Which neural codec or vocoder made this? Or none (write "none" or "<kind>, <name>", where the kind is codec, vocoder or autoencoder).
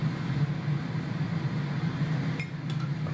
none